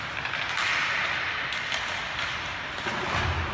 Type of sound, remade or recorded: recorded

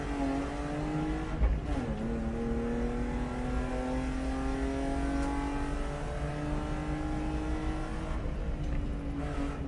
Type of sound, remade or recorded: recorded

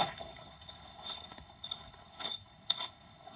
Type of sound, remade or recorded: remade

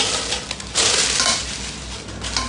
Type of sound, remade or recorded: recorded